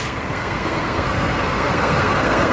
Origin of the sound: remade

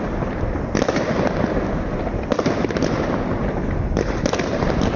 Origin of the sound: recorded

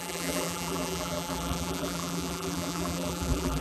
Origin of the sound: remade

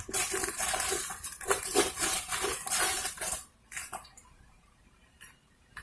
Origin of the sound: remade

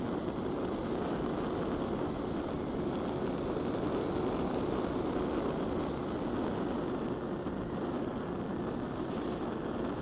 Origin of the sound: recorded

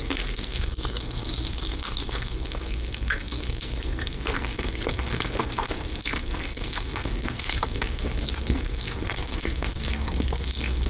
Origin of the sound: remade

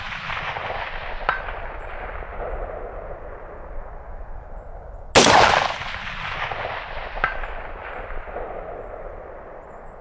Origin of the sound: recorded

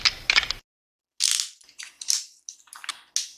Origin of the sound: recorded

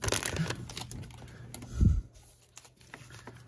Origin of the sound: recorded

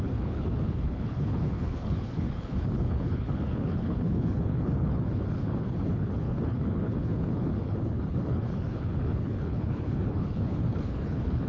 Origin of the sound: remade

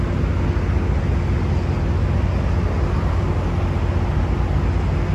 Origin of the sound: recorded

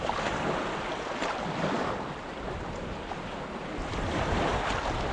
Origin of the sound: recorded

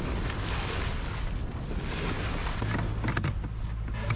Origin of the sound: recorded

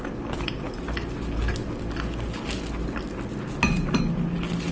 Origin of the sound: recorded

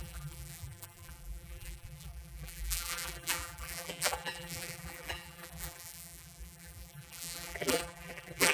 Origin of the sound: remade